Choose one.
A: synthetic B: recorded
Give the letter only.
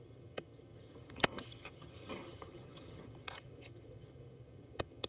A